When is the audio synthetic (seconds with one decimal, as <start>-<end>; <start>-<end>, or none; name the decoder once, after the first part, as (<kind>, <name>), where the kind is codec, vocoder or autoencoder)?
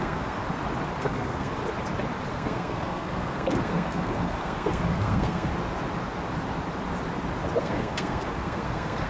0.0-0.4 (codec, SNAC); 1.0-1.6; 2.3-5.5; 7.6-9.1